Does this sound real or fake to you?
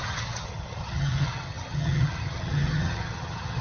fake